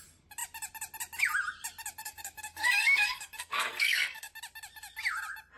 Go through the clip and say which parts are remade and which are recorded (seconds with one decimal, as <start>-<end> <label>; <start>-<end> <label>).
0.0-2.0 recorded; 2.0-4.3 remade; 4.3-5.6 recorded